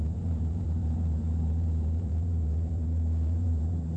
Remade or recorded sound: remade